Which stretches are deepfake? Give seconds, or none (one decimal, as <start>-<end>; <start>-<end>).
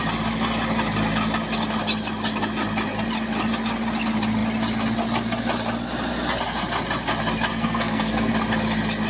7.5-8.3